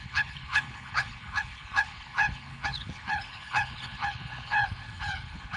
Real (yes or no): no